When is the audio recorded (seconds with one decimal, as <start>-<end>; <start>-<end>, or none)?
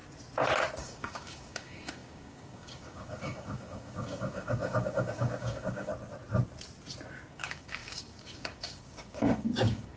0.0-0.8; 5.9-7.3